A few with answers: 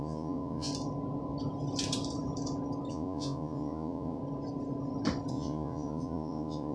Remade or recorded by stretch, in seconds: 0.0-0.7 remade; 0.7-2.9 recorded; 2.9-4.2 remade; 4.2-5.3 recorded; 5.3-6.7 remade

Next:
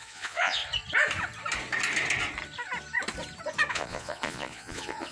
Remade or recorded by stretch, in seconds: 0.0-0.6 remade; 0.6-3.7 recorded; 3.7-5.1 remade

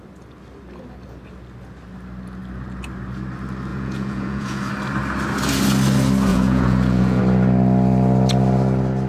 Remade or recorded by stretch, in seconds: 0.0-3.7 recorded; 3.7-4.7 remade; 4.7-6.3 recorded; 6.3-7.2 remade; 7.2-9.1 recorded

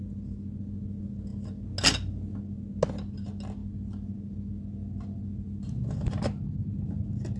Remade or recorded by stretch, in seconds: 0.0-7.4 recorded

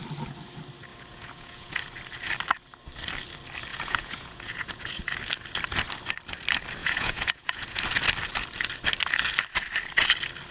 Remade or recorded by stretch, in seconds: 0.0-0.9 recorded; 0.9-1.7 remade; 1.7-3.7 recorded; 3.7-5.0 remade; 5.0-6.8 recorded; 6.8-7.8 remade; 7.8-10.5 recorded

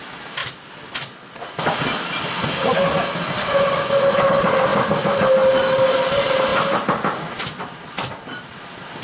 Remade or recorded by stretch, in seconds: 0.0-9.0 recorded

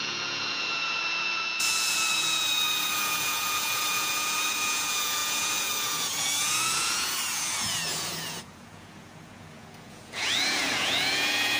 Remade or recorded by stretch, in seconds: 0.0-11.6 remade

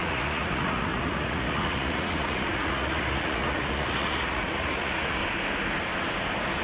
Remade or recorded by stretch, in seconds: 0.0-5.2 remade; 5.2-6.6 recorded